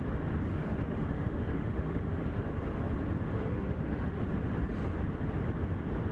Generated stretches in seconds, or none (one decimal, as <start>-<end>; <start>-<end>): 0.5-2.5; 3.4-4.2